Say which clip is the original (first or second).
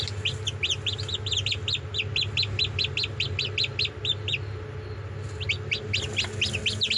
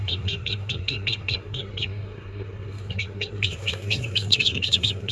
first